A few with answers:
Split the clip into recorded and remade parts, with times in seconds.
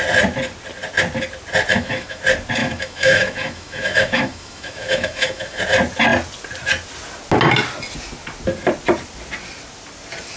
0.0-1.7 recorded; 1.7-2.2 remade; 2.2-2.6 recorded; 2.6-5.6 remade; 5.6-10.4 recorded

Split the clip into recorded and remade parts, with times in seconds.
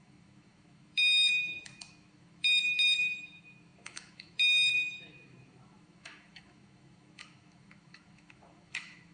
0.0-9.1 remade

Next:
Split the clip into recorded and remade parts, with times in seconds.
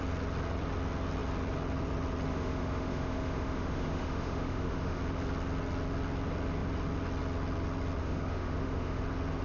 0.0-2.3 recorded; 2.3-5.0 remade; 5.0-8.0 recorded; 8.0-9.0 remade; 9.0-9.4 recorded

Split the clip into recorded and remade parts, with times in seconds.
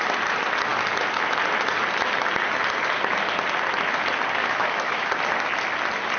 0.0-4.4 recorded; 4.4-5.1 remade; 5.1-6.2 recorded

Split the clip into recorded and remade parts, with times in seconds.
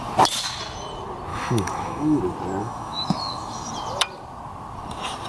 0.0-1.3 recorded; 1.3-2.2 remade; 2.2-2.6 recorded; 2.6-3.7 remade; 3.7-5.3 recorded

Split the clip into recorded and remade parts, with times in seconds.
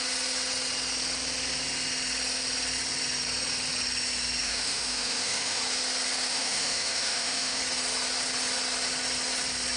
0.0-4.4 recorded; 4.4-5.6 remade; 5.6-6.3 recorded; 6.3-7.6 remade; 7.6-9.8 recorded